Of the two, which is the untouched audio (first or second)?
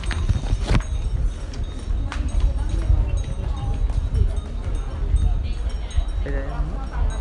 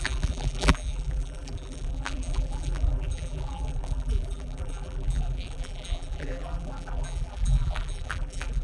first